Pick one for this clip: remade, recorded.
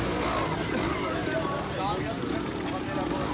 recorded